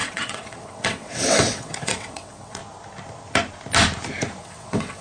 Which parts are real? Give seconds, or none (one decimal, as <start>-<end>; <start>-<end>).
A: 2.6-4.4